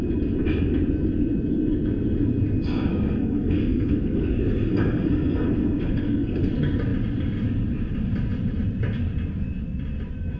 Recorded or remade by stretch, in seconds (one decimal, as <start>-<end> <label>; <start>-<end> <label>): 0.0-2.9 recorded; 2.9-6.5 remade; 6.5-10.4 recorded